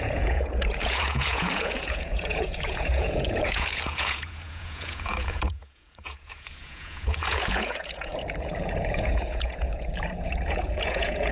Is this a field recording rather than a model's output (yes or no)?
no